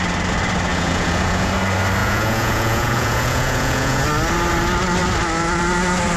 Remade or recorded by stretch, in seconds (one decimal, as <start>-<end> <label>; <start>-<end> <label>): 0.0-0.7 recorded; 0.7-1.5 remade; 1.5-2.0 recorded; 2.0-4.0 remade; 4.0-6.2 recorded